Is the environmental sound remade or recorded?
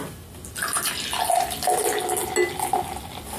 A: recorded